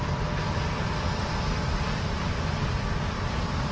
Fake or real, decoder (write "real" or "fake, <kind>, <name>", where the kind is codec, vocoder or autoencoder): real